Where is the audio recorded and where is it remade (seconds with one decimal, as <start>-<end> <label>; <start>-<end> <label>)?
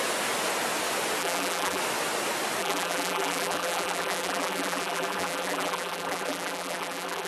0.0-1.2 recorded; 1.2-1.8 remade; 1.8-2.6 recorded; 2.6-7.3 remade